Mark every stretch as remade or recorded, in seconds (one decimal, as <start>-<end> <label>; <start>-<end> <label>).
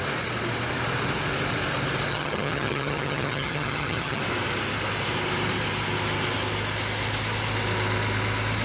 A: 0.0-2.1 recorded; 2.1-4.2 remade; 4.2-8.6 recorded